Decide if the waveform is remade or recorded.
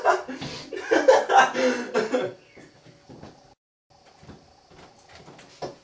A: recorded